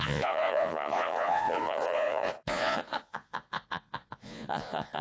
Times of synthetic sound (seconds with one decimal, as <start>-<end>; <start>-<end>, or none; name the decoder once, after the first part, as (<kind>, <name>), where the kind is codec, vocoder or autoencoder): 0.0-5.0 (vocoder, Vocos)